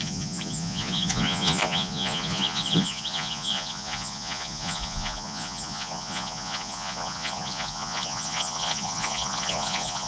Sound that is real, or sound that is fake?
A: fake